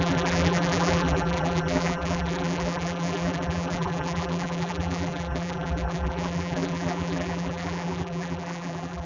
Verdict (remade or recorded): remade